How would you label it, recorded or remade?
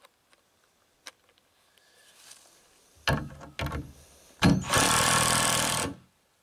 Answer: recorded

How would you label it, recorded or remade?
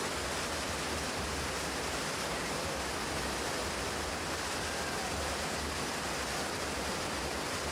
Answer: recorded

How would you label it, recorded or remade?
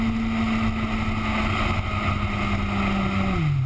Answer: recorded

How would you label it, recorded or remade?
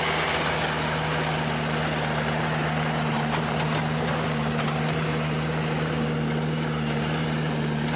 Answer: recorded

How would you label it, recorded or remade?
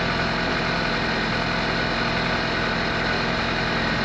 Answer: recorded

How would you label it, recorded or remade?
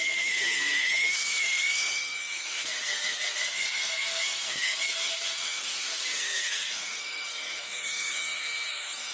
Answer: remade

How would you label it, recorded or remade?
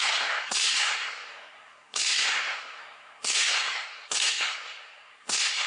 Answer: remade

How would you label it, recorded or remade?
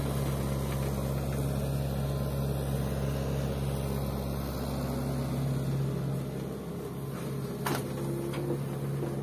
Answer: recorded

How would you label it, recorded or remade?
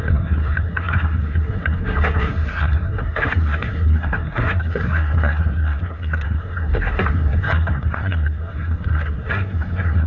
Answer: remade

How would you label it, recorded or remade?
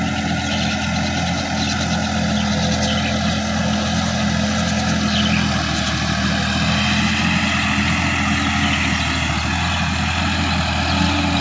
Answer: recorded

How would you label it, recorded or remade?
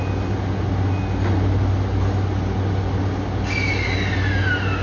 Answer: recorded